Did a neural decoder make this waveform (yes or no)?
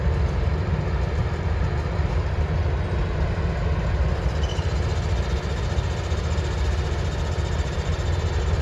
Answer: no